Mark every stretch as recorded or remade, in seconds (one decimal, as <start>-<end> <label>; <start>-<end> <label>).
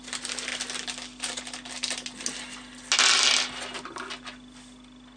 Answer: 0.0-5.2 recorded